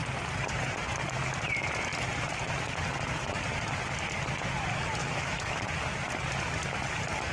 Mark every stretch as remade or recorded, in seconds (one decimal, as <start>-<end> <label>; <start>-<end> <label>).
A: 0.0-5.0 recorded; 5.0-5.6 remade; 5.6-7.3 recorded